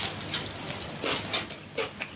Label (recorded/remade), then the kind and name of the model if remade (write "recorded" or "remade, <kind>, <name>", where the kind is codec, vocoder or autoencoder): recorded